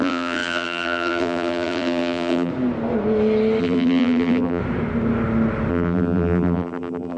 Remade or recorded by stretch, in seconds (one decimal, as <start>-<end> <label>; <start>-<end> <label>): 0.0-2.5 remade; 2.5-3.6 recorded; 3.6-4.6 remade; 4.6-5.7 recorded; 5.7-7.2 remade